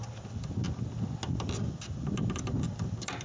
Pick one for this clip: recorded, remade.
recorded